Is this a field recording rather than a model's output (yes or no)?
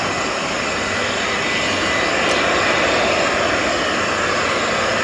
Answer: yes